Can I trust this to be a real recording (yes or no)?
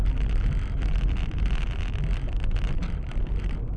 no